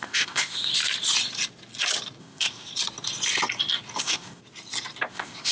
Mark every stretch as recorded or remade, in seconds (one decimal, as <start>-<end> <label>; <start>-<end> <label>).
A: 0.0-0.7 remade; 0.7-2.2 recorded; 2.2-2.7 remade; 2.7-4.0 recorded; 4.0-4.4 remade; 4.4-5.1 recorded; 5.1-5.5 remade